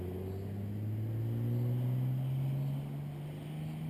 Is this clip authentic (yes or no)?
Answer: yes